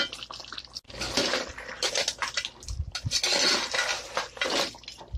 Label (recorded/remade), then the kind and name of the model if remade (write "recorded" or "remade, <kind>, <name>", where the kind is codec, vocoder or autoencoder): recorded